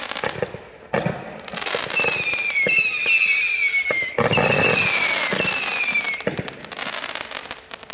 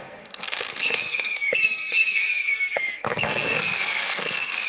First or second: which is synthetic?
second